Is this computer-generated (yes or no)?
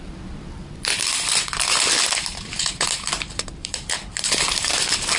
yes